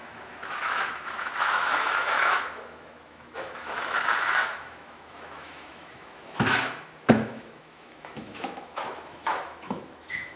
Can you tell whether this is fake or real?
fake